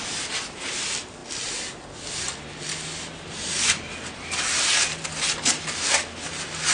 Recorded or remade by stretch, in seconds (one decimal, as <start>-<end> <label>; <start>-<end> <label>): 0.0-6.7 recorded